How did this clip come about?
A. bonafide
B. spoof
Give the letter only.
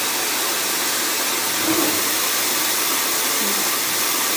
A